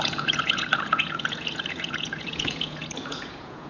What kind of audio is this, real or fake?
fake